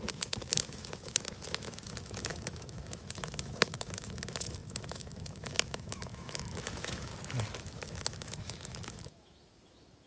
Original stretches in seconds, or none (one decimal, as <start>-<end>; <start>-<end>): 7.1-7.6